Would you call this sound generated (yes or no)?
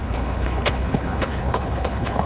yes